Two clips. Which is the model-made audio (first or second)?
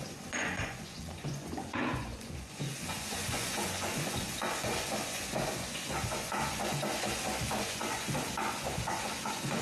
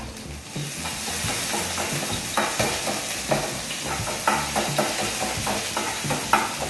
first